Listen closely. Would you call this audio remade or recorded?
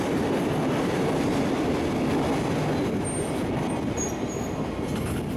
recorded